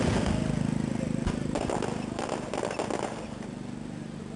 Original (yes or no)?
yes